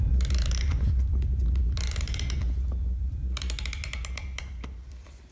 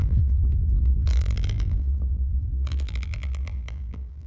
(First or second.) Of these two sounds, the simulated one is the second